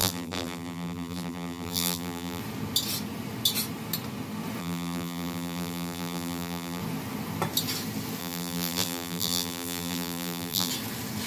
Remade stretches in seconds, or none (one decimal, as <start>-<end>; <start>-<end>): 0.0-2.4; 4.6-6.8; 8.2-10.7

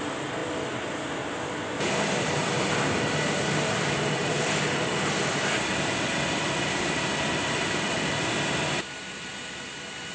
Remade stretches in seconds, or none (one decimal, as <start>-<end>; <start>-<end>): 0.0-10.1

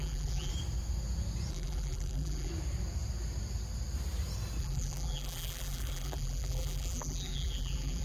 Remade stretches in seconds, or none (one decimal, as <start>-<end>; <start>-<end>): 0.0-0.5; 1.5-2.5; 4.6-8.0

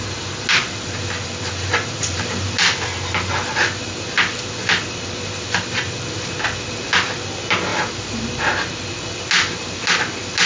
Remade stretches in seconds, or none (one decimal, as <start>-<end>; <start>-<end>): 7.7-8.2

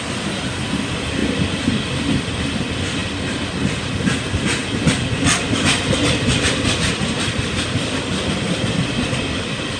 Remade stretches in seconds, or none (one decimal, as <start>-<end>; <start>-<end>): none

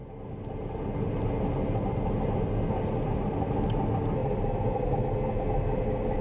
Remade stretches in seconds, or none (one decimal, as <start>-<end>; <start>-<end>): 4.2-4.9

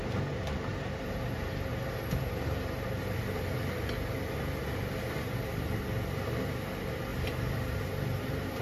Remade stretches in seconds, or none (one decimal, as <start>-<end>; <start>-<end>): 0.7-3.8; 4.9-5.8; 7.1-7.9

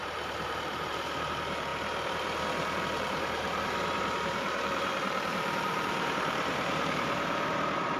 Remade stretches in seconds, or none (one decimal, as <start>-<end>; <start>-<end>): 0.0-1.7; 2.8-8.0